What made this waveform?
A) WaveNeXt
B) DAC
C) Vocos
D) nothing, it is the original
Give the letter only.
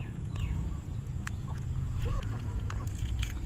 C